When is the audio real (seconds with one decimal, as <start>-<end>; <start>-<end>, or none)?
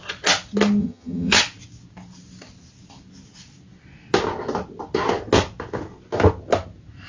0.0-0.8; 1.4-7.1